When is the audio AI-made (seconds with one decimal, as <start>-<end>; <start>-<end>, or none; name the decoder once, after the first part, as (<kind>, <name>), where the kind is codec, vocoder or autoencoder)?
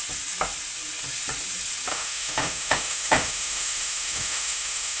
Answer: 1.9-5.0 (autoencoder, DAC-VAE)